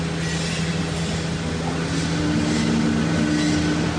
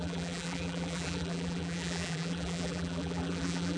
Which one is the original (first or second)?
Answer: first